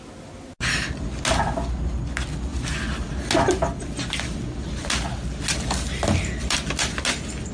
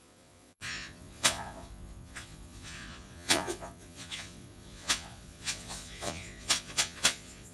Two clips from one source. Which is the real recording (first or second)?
first